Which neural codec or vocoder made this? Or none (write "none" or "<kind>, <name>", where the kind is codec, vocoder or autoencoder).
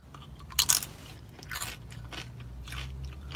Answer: none